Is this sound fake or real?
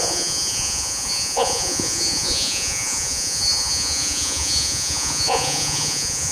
fake